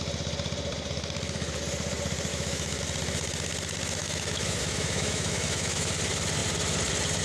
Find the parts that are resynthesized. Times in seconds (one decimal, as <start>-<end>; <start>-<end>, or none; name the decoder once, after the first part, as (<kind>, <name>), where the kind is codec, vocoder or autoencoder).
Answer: 2.3-2.8 (autoencoder, DAC-VAE); 4.0-5.9